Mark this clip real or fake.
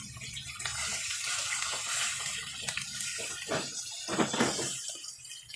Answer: real